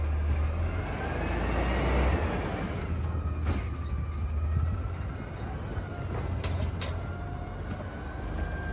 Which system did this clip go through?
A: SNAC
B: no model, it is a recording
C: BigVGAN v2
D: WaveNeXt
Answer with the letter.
B